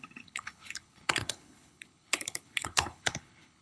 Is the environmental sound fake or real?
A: fake